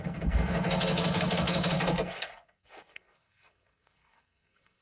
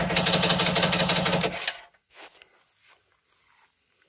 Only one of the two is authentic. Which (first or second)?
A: second